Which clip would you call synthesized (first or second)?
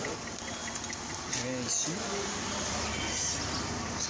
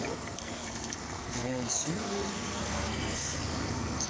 second